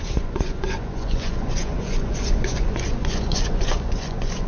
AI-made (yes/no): yes